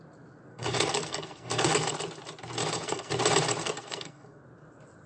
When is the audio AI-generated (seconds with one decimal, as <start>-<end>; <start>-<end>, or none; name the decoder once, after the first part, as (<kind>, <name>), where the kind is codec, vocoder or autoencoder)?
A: 0.5-1.9 (codec, SNAC); 2.6-3.1; 3.6-4.4